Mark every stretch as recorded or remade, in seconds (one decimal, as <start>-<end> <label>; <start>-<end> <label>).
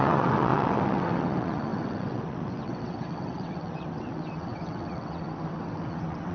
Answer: 0.0-6.3 remade